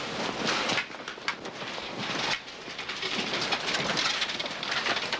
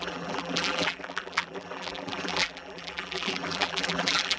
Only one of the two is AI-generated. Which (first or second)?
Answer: second